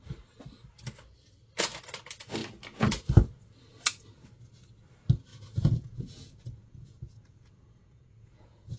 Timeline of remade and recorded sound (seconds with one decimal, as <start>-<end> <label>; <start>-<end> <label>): 0.0-5.3 recorded; 5.3-8.8 remade